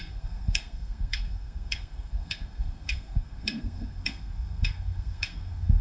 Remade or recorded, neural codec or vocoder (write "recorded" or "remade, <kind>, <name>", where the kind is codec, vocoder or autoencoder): remade, codec, SNAC